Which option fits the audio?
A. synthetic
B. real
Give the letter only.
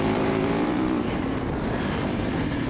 A